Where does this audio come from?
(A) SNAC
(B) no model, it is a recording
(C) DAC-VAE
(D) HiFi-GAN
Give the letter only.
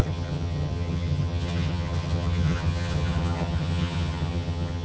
D